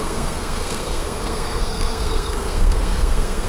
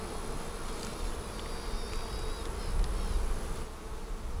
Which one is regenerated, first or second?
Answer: first